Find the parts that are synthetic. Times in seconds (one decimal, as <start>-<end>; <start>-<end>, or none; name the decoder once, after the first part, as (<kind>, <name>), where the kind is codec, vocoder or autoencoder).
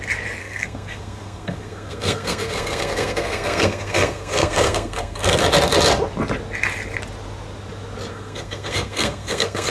0.4-5.4 (codec, SNAC); 8.1-9.7